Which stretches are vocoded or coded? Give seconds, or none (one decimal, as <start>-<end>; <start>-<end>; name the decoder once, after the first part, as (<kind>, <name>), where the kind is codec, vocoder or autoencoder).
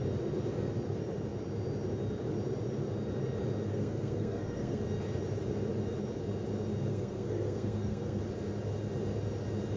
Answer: 3.7-4.8 (codec, SNAC); 6.9-8.2